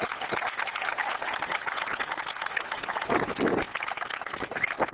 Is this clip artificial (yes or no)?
no